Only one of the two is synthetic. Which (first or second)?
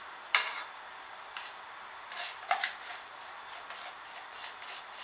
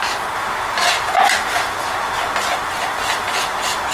first